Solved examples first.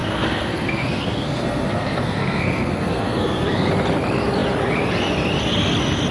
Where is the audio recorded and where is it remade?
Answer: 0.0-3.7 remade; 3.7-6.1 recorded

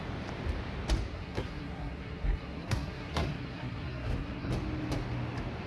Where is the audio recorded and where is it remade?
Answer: 0.0-1.1 recorded; 1.1-4.5 remade; 4.5-5.7 recorded

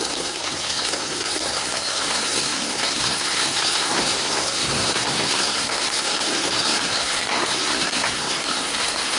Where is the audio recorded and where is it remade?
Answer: 0.0-9.2 remade

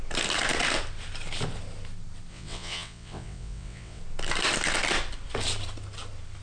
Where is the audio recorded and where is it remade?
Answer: 0.0-2.3 recorded; 2.3-4.0 remade; 4.0-6.4 recorded

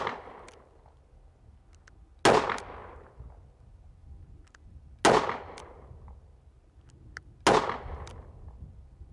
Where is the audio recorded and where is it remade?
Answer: 0.0-9.1 recorded

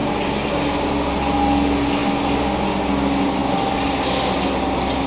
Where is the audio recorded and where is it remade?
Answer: 0.0-5.1 recorded

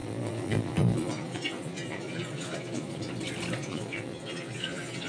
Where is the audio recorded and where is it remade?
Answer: 0.0-3.1 remade; 3.1-3.6 recorded; 3.6-5.1 remade